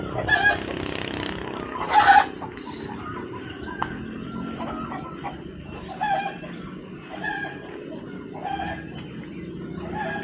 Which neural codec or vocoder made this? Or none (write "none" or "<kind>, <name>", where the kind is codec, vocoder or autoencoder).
none